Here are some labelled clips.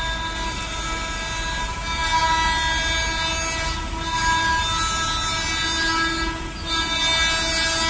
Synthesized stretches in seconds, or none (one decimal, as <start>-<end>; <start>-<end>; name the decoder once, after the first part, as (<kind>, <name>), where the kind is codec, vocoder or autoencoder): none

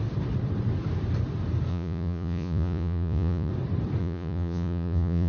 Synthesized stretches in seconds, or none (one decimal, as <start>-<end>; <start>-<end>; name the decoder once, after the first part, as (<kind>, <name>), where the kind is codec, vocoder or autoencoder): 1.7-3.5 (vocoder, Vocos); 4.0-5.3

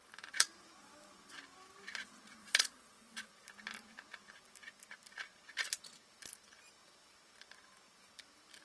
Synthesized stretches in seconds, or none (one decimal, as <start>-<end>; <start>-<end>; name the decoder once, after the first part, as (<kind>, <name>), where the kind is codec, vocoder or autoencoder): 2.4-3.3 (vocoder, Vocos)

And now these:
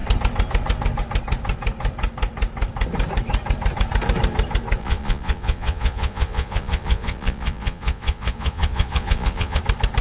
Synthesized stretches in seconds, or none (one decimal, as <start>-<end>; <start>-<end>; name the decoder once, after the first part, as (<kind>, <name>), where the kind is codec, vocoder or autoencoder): 4.8-9.6 (vocoder, Vocos)

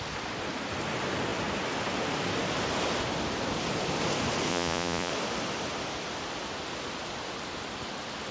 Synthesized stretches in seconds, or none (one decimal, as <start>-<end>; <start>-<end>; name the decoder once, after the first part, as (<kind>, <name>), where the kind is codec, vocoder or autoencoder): 4.5-5.1 (vocoder, Vocos)

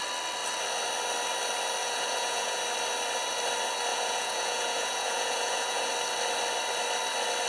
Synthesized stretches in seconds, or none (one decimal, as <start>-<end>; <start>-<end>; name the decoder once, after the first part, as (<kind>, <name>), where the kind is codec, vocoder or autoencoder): 1.8-2.6 (vocoder, Vocos); 3.9-5.9